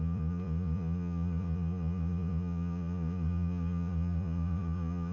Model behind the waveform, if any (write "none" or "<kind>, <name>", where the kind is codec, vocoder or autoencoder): vocoder, Vocos